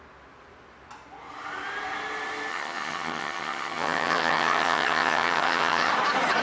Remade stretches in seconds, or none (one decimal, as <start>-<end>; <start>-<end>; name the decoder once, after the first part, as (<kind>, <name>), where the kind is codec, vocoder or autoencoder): 2.5-5.9 (vocoder, HiFi-GAN)